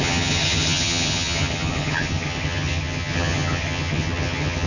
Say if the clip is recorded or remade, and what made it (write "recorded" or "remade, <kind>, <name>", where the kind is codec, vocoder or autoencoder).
remade, vocoder, HiFi-GAN